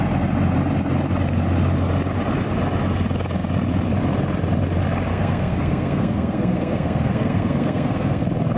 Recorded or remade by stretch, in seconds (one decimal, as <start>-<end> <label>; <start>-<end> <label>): 0.0-5.1 recorded; 5.1-8.2 remade; 8.2-8.6 recorded

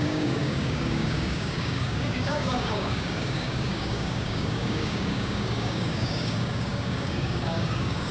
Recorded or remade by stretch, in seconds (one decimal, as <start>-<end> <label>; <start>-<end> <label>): 0.0-8.1 remade

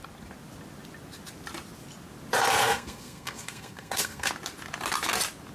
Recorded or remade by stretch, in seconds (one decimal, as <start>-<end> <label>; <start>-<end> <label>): 0.0-2.6 recorded; 2.6-4.3 remade; 4.3-5.5 recorded

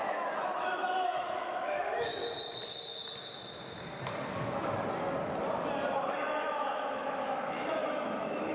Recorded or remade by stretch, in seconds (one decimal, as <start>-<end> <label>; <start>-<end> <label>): 0.0-2.2 remade; 2.2-6.1 recorded; 6.1-8.5 remade

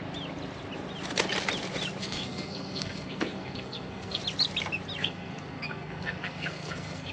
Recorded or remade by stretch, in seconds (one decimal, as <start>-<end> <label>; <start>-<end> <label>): 0.0-2.0 recorded; 2.0-4.2 remade; 4.2-5.0 recorded; 5.0-7.1 remade

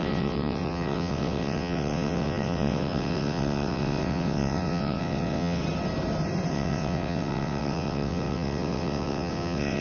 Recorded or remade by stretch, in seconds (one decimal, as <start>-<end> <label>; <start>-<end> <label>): 0.0-5.6 remade; 5.6-6.5 recorded; 6.5-9.8 remade